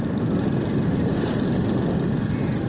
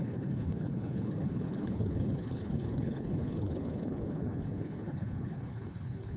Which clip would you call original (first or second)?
first